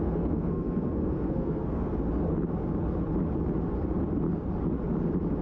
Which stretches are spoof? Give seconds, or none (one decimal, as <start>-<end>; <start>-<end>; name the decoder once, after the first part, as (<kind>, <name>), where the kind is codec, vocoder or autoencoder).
0.0-1.9 (codec, SNAC)